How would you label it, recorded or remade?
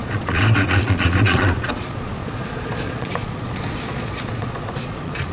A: remade